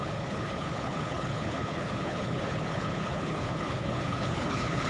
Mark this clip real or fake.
fake